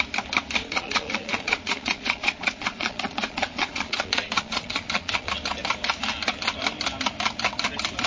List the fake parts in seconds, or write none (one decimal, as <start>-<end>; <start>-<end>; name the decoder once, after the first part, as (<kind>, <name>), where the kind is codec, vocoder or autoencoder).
0.6-5.3 (vocoder, Vocos)